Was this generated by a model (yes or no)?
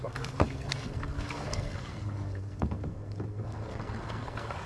yes